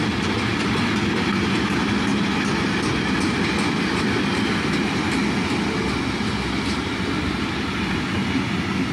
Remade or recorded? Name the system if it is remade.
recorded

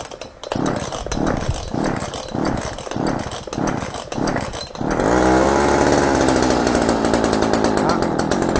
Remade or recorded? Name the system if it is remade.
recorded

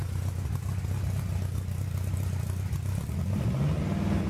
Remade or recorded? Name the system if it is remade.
recorded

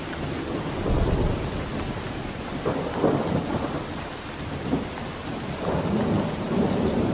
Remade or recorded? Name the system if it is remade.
remade, vocoder, BigVGAN v2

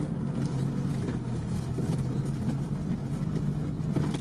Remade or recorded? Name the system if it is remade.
recorded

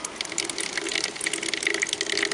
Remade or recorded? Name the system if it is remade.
recorded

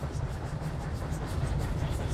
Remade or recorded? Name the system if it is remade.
recorded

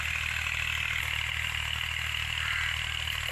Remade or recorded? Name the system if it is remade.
recorded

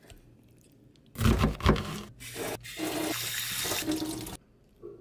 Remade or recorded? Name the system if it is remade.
recorded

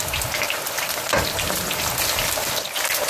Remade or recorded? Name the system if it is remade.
recorded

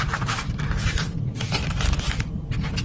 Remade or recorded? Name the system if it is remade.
recorded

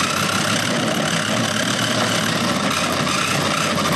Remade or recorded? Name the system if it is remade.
recorded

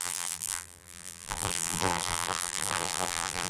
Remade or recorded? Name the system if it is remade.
remade, vocoder, BigVGAN v2